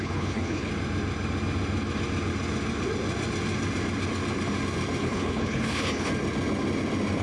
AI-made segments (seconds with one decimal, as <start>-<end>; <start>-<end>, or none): 0.0-0.7; 5.0-6.1

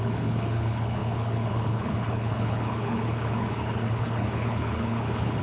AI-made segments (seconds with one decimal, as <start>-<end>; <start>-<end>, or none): 0.0-5.4

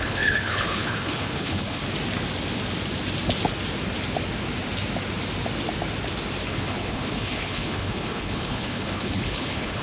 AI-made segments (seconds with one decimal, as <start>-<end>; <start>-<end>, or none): 0.0-1.8; 6.5-9.8

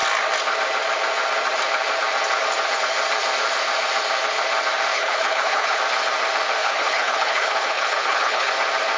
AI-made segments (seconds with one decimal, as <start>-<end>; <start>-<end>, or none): 4.9-5.8; 6.6-8.5

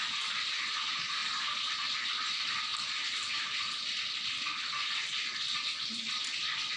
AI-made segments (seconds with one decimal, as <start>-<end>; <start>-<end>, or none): none

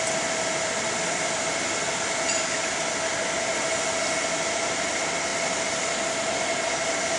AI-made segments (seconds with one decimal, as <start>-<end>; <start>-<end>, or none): none

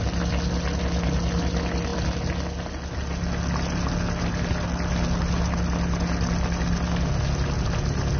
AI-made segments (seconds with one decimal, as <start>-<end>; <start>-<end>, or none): none